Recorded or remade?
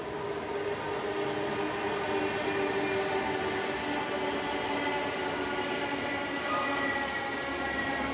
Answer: recorded